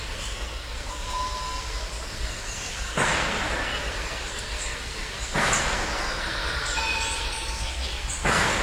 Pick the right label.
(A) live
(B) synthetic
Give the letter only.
B